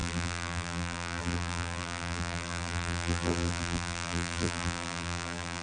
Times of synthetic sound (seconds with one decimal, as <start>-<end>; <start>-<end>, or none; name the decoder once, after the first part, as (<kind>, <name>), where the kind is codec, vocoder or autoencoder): 0.0-5.6 (vocoder, BigVGAN v2)

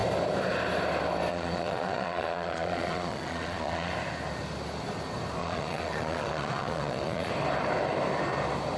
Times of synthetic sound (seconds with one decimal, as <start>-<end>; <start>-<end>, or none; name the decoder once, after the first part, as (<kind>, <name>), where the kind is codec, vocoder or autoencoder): 1.3-3.9 (vocoder, Vocos); 5.4-7.3

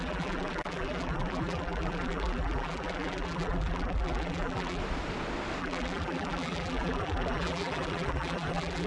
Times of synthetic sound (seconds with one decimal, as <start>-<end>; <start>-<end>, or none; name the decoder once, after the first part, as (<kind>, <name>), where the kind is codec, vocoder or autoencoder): 0.0-4.8 (vocoder, BigVGAN v2); 5.6-8.9

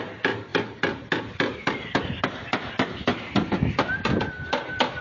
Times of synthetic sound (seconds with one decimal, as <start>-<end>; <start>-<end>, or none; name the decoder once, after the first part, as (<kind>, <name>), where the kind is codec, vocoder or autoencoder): none

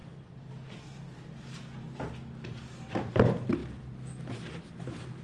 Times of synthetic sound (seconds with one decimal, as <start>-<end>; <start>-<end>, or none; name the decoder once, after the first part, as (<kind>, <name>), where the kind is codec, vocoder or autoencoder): none